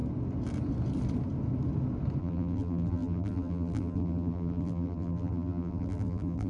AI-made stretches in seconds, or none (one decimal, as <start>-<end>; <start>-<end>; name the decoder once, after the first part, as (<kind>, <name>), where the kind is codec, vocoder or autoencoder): 2.2-6.5 (vocoder, BigVGAN v2)